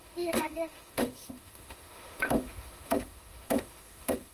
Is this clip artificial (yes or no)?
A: yes